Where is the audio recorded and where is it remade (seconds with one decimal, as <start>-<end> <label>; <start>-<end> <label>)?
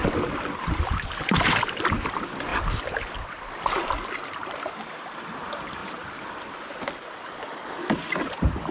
0.0-8.7 recorded